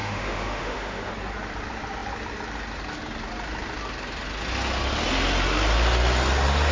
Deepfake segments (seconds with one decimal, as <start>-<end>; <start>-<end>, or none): 0.0-1.1

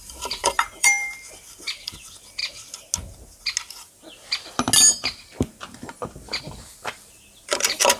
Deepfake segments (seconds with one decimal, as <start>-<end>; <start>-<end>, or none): 0.0-2.4; 6.4-8.0

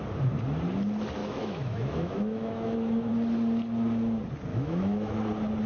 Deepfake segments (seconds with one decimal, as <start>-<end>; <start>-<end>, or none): 1.2-3.1; 4.5-5.1

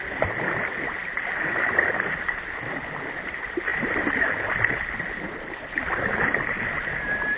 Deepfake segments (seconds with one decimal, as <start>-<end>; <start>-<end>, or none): 3.7-6.0

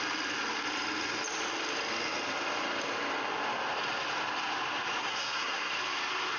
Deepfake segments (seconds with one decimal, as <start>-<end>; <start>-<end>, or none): 5.0-5.7

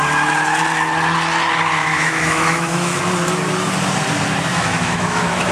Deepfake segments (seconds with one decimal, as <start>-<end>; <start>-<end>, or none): 1.8-3.0; 4.5-5.5

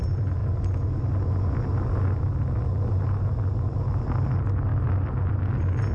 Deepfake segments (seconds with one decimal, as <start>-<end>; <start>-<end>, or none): none